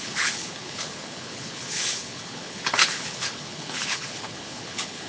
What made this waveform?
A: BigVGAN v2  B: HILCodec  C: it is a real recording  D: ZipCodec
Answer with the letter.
B